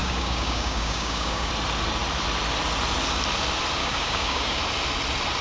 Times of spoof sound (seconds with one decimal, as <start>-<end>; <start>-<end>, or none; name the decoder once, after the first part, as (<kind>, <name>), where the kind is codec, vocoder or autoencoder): 0.0-1.5 (codec, DAC); 3.8-4.6